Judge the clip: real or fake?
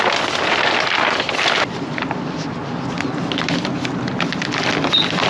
real